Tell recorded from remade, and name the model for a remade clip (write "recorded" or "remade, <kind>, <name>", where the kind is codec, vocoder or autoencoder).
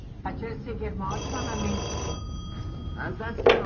recorded